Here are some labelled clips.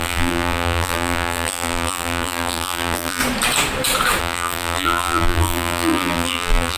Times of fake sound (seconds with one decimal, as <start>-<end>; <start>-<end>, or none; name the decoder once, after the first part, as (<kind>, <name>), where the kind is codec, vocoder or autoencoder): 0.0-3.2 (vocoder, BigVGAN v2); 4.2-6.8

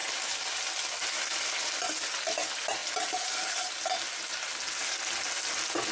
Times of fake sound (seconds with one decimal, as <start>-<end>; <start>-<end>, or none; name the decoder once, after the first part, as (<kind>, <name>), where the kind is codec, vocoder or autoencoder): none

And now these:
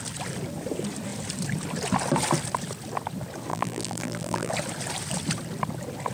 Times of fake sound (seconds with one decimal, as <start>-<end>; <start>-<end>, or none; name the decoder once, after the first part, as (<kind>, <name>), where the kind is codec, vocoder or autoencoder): 3.5-4.5 (vocoder, BigVGAN v2)

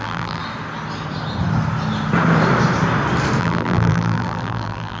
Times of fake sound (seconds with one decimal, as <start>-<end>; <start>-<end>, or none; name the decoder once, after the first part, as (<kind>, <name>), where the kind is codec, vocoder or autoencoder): 0.0-0.4 (vocoder, BigVGAN v2); 3.4-5.0